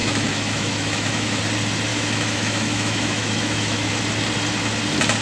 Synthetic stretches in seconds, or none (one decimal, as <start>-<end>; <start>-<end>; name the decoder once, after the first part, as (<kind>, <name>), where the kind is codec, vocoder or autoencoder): 0.0-1.4 (autoencoder, DAC-VAE); 1.9-3.9